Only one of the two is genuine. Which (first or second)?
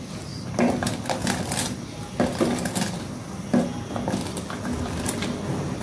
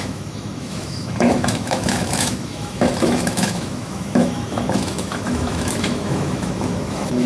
first